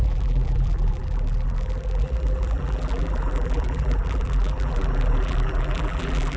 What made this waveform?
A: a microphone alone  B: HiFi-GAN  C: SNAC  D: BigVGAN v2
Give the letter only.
D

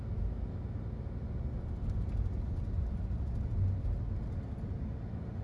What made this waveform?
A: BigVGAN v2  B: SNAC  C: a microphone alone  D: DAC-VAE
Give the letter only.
C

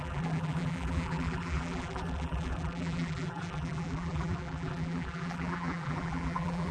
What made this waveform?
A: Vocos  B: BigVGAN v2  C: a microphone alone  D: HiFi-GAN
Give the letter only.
B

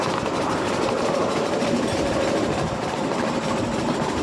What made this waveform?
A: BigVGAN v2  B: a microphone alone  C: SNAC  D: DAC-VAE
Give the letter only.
A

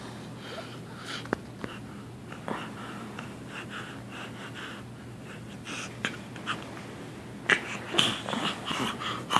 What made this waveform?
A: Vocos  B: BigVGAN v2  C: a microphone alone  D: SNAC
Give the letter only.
C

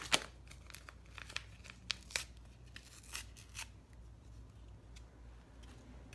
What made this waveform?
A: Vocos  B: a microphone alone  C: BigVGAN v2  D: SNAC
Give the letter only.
B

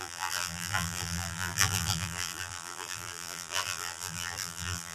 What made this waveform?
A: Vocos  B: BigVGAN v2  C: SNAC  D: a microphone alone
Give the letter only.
B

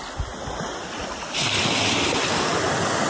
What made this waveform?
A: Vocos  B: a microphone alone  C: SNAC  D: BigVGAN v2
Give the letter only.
B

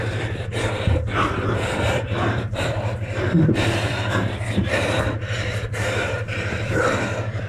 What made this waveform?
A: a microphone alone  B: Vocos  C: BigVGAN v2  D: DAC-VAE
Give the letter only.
C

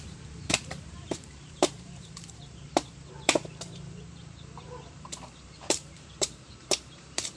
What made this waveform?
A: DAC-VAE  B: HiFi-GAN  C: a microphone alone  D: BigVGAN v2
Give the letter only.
D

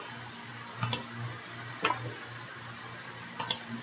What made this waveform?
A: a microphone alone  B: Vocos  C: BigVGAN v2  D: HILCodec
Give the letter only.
A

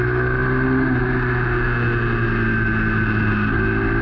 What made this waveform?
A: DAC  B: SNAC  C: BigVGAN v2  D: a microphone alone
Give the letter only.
D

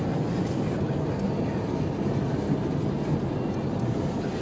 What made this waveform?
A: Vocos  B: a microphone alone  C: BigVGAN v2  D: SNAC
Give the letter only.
B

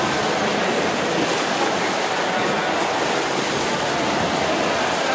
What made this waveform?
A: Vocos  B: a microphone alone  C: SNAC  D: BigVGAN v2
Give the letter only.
B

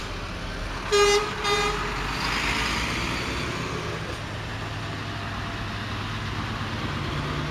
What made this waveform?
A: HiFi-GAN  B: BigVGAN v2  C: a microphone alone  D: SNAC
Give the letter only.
C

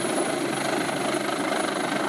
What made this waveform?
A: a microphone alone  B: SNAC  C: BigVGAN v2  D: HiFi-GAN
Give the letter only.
C